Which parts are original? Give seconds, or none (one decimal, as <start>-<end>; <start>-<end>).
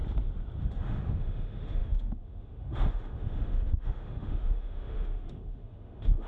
0.0-0.6